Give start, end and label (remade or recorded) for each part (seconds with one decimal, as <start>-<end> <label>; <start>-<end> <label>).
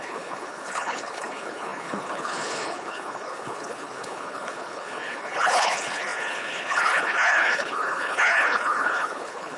0.0-9.6 remade